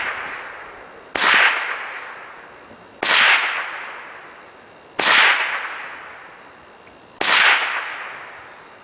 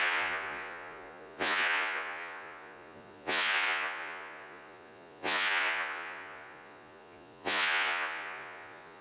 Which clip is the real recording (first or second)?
first